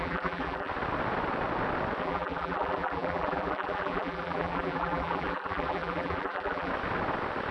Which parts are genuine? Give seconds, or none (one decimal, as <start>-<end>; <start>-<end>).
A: 0.7-2.0; 6.7-7.5